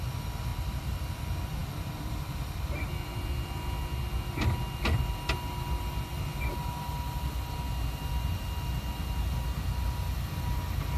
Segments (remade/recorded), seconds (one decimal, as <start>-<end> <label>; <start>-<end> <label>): 0.0-0.5 recorded; 0.5-1.2 remade; 1.2-1.6 recorded; 1.6-3.1 remade; 3.1-11.0 recorded